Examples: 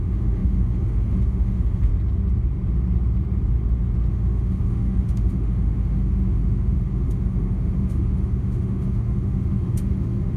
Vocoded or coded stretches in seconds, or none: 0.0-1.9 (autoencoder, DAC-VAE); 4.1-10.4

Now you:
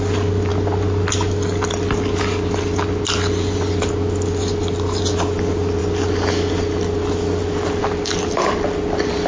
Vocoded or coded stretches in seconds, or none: none

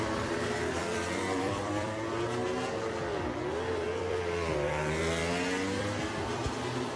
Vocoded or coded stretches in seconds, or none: 0.0-2.4 (vocoder, BigVGAN v2); 4.0-5.2; 5.8-7.0

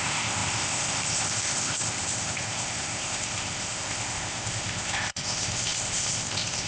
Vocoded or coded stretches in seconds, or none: 0.0-6.7 (codec, ZipCodec)

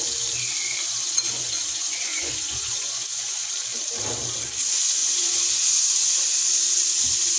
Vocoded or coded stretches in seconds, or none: 0.9-3.5 (vocoder, Vocos); 5.0-6.1

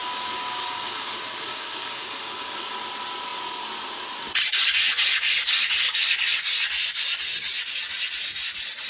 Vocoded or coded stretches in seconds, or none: 0.0-1.1 (codec, DAC); 1.5-2.7

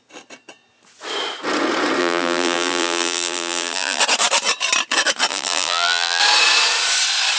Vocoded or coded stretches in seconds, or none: 2.0-4.0 (vocoder, BigVGAN v2); 5.3-6.2

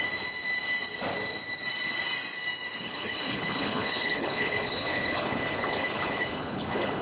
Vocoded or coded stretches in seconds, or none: 2.8-7.0 (codec, HILCodec)